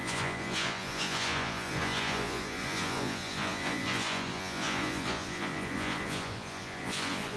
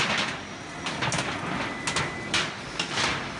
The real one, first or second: second